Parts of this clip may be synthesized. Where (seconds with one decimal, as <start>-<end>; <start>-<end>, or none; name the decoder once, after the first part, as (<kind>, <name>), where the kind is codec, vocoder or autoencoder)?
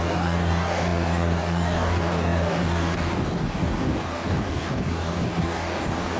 0.0-6.2 (codec, DAC)